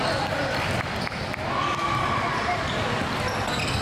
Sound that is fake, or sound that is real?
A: real